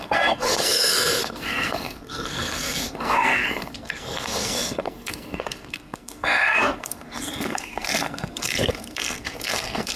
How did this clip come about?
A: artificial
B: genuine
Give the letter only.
A